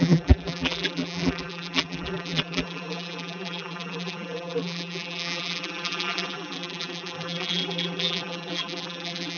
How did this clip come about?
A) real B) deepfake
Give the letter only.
B